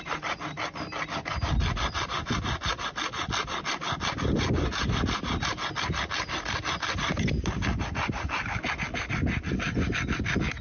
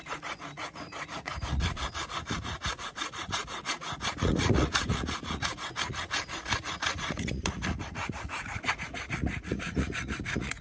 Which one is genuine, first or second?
first